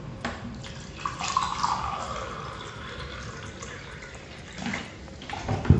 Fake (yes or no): yes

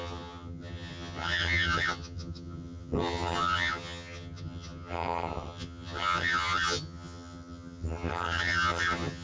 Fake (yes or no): yes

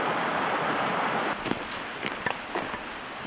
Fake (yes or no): no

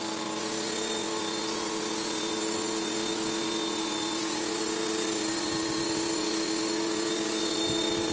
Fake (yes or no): no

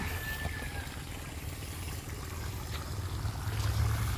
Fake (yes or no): no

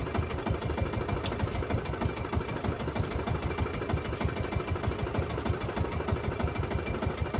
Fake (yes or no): no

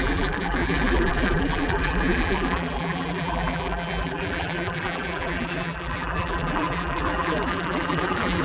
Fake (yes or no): yes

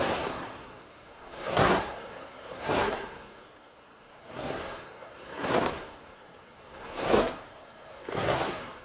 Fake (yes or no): yes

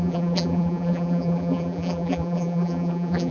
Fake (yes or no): yes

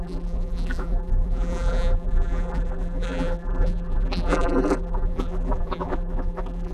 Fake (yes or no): yes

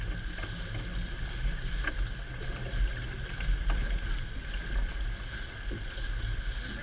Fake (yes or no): no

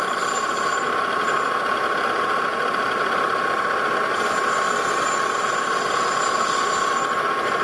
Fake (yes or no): no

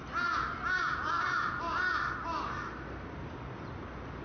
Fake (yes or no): no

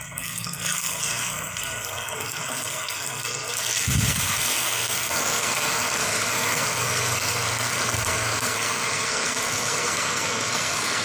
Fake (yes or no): yes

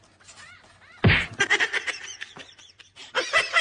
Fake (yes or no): no